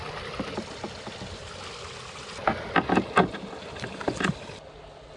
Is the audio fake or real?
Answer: real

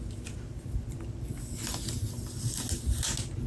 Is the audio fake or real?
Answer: real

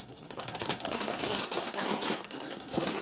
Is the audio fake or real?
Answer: fake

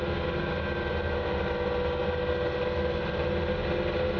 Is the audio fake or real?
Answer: real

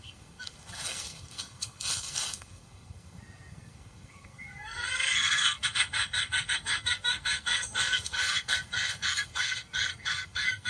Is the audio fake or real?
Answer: fake